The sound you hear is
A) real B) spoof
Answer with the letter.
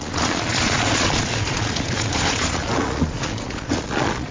B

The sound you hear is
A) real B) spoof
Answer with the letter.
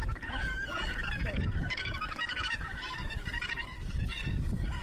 B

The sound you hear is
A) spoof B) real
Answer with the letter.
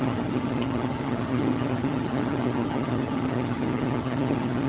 A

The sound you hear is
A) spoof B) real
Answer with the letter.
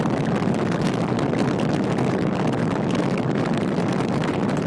B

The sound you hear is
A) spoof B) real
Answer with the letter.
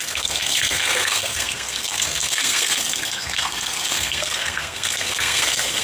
A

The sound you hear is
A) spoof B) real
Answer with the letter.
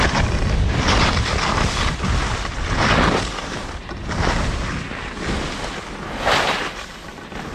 B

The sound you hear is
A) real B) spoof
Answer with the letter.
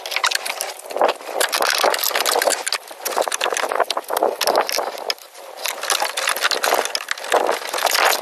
A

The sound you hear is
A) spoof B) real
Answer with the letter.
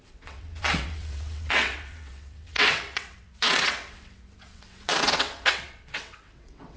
A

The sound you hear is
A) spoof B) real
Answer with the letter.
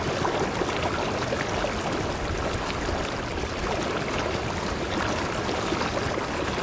B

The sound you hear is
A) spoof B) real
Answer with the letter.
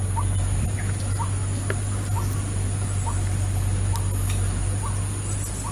B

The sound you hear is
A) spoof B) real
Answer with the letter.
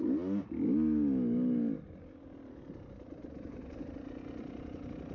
B